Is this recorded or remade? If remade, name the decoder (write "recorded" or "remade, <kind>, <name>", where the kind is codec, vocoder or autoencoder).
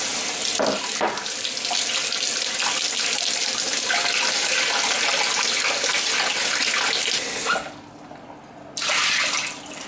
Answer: recorded